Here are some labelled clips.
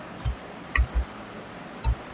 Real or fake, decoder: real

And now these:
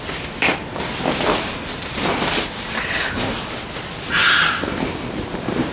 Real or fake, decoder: real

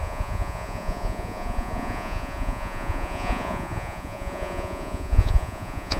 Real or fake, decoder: fake, vocoder, Vocos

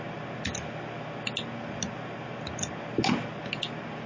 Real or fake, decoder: real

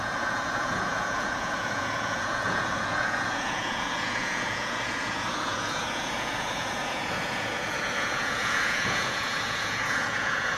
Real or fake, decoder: fake, vocoder, Vocos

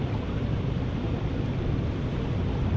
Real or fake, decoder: real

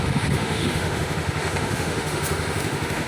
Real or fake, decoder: fake, autoencoder, DAC-VAE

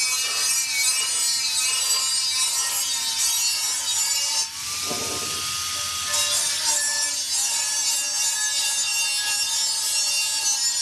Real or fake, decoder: real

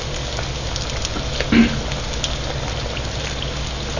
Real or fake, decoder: real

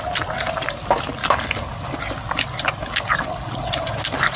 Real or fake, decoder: real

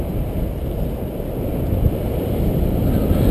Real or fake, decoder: real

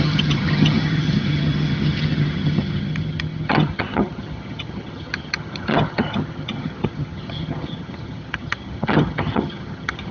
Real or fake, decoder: fake, vocoder, HiFi-GAN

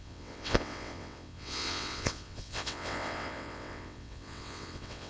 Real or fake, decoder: fake, vocoder, WaveNeXt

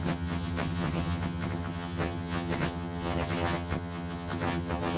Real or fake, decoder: fake, vocoder, HiFi-GAN